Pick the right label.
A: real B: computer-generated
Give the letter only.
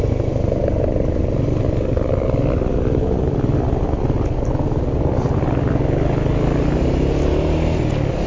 A